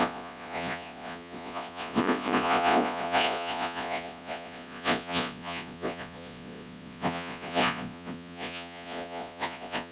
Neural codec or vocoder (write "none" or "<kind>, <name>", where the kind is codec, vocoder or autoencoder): vocoder, Vocos